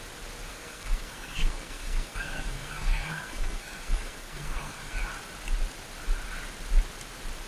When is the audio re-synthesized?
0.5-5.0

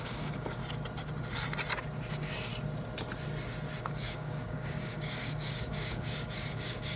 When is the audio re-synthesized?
0.0-0.6; 2.1-2.5; 3.8-7.0

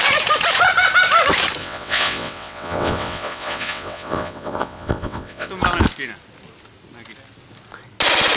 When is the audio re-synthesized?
1.6-5.5

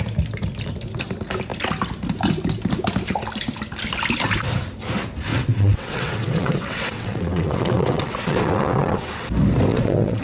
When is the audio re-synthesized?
5.3-9.1; 9.7-10.2

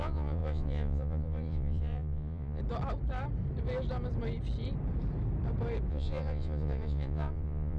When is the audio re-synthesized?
0.0-2.6; 5.9-7.8

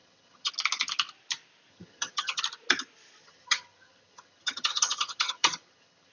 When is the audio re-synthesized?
0.0-0.5; 1.7-2.4; 3.2-6.1